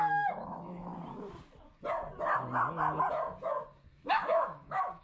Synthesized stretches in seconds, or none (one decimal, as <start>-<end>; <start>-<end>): 0.0-0.9; 3.9-5.0